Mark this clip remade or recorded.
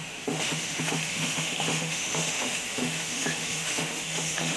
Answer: remade